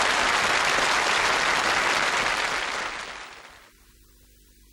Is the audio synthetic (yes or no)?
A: no